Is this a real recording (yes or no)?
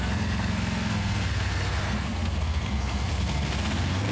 no